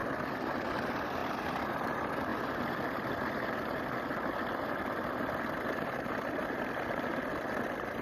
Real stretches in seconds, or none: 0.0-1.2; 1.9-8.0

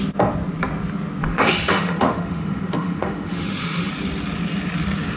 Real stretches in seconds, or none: 0.0-1.2; 3.9-5.2